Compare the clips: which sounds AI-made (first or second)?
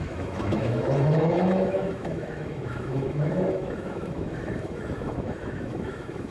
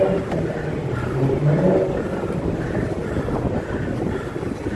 first